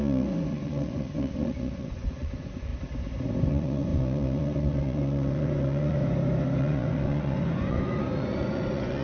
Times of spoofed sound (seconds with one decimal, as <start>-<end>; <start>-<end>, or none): 0.0-2.7; 3.5-6.0; 6.6-9.0